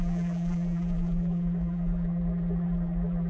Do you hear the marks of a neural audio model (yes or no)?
yes